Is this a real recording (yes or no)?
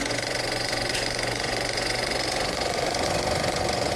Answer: no